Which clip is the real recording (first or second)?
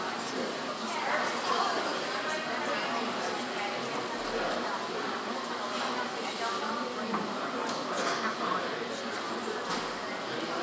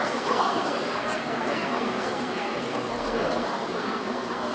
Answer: first